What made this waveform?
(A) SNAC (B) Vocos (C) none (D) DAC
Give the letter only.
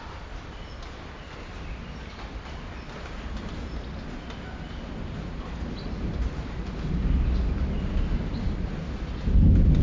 C